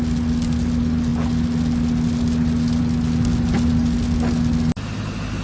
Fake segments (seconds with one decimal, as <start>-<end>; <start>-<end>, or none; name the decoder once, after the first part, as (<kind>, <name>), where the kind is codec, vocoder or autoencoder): none